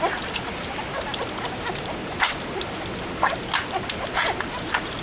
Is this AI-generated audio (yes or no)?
no